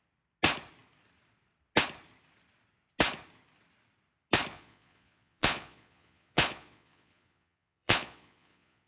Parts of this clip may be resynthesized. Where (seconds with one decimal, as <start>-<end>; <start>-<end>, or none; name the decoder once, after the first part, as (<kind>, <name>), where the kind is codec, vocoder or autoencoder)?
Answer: 4.5-8.9 (vocoder, Vocos)